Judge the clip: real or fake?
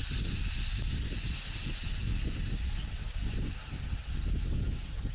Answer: real